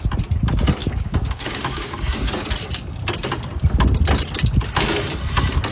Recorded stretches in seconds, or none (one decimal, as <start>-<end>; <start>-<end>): 0.0-0.8; 2.0-5.7